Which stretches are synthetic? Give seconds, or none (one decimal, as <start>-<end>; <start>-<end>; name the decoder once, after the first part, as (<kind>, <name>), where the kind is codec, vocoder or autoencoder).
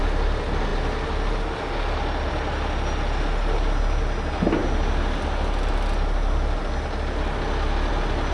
none